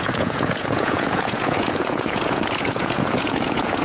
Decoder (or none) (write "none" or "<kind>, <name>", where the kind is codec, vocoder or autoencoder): vocoder, Vocos